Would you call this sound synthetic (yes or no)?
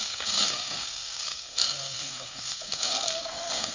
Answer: yes